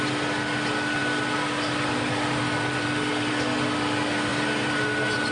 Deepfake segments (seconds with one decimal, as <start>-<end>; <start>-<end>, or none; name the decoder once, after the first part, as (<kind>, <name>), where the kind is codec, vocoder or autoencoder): 4.3-5.3 (vocoder, BigVGAN v2)